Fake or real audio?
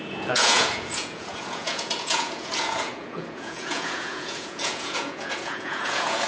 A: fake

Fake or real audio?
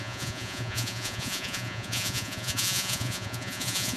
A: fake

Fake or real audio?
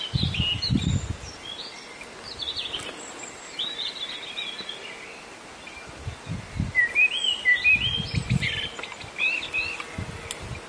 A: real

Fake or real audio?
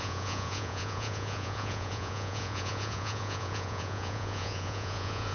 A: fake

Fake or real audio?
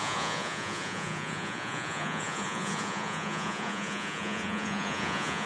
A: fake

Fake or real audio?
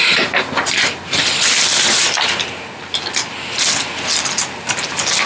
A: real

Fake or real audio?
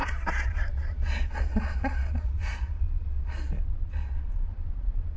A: fake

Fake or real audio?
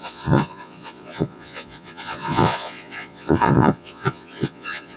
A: fake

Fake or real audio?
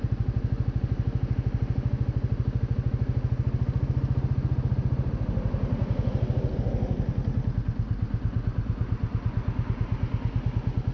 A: real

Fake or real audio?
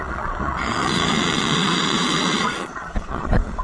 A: fake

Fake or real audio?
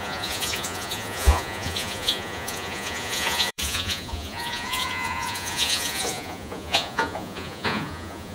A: fake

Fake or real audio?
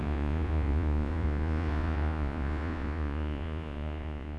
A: fake